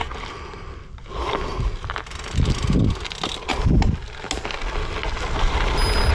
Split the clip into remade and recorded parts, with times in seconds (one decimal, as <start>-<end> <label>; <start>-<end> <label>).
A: 0.0-6.1 recorded